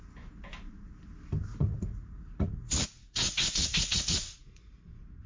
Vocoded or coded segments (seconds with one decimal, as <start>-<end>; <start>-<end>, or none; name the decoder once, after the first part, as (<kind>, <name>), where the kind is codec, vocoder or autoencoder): 1.5-4.7 (vocoder, Vocos)